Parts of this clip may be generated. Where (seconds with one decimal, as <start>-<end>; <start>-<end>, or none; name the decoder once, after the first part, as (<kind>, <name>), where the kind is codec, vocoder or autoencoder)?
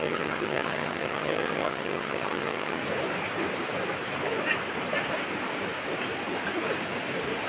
0.0-2.8 (vocoder, HiFi-GAN)